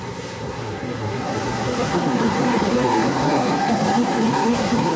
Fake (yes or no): yes